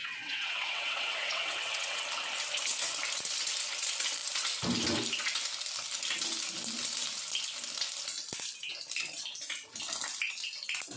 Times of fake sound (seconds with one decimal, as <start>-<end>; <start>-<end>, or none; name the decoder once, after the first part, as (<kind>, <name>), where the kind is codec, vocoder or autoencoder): 0.0-2.0 (vocoder, WaveNeXt)